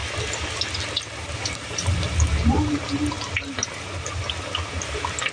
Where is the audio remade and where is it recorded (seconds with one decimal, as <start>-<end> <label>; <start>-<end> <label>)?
0.0-5.3 recorded